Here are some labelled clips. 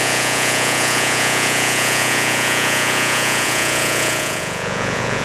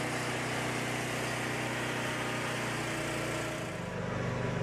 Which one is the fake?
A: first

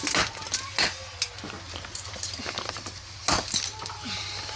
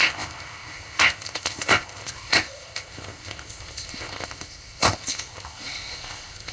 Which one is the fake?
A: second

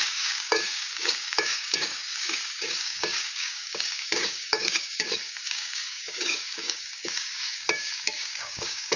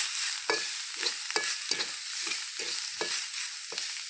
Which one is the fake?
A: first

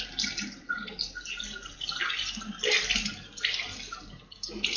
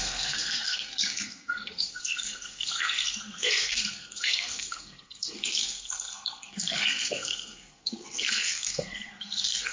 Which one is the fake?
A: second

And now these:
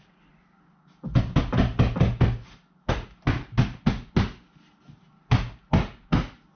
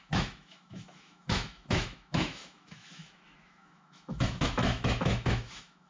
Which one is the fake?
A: second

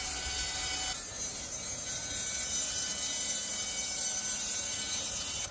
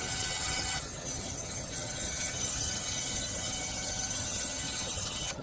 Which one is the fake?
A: second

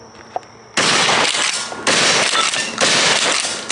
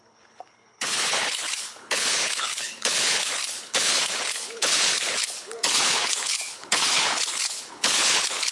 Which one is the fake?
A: second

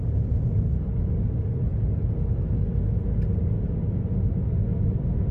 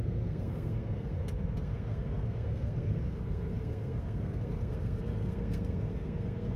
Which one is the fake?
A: second